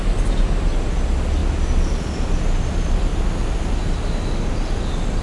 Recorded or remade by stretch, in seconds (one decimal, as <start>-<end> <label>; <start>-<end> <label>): 0.0-5.2 recorded